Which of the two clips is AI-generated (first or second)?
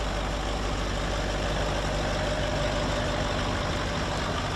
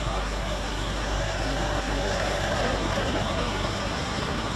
second